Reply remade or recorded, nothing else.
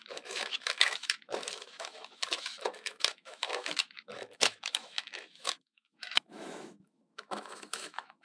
remade